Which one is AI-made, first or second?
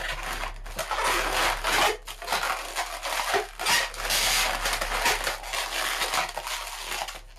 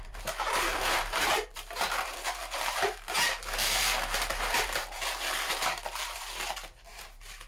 second